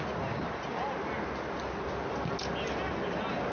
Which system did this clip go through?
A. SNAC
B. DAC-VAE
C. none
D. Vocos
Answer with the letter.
C